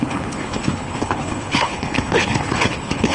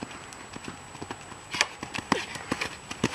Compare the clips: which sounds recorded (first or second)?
second